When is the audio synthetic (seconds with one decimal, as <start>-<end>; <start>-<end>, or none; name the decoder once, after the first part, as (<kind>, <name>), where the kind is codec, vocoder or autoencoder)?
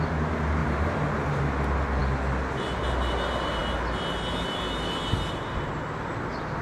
0.6-1.4 (vocoder, BigVGAN v2)